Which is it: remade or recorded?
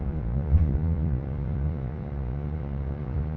remade